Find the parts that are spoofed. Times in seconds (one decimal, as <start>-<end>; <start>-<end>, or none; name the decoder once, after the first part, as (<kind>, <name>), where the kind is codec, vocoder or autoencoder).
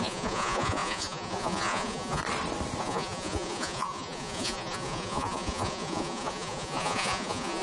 0.0-2.2 (vocoder, Vocos); 2.8-7.6